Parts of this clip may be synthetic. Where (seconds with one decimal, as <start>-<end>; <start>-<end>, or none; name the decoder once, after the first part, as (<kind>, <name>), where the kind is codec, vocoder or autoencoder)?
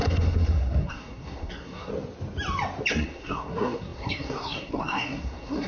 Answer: 0.0-1.9 (codec, SNAC); 2.9-5.7